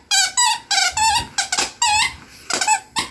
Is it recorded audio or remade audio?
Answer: recorded